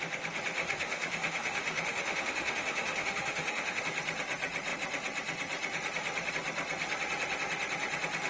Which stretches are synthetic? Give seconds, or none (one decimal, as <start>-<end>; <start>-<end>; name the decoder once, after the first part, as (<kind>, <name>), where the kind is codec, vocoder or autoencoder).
0.6-3.8 (autoencoder, DAC-VAE)